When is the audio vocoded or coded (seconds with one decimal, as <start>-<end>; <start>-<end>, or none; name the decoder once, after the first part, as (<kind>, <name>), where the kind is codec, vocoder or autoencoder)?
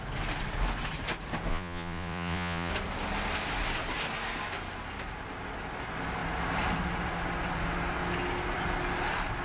1.5-2.7 (vocoder, Vocos)